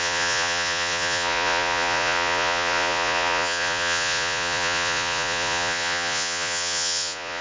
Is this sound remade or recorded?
remade